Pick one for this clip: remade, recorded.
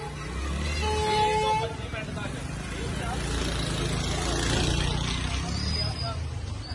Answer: recorded